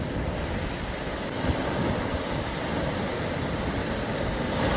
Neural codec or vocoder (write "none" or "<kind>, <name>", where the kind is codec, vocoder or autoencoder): vocoder, BigVGAN v2